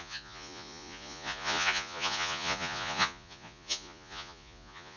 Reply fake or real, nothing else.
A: fake